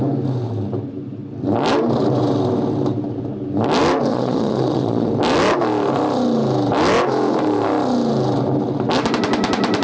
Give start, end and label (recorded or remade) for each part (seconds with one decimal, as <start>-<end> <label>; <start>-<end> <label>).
0.0-4.1 recorded; 4.1-5.1 remade; 5.1-9.8 recorded